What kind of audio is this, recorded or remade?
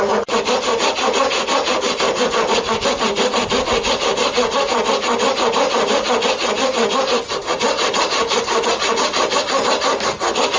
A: recorded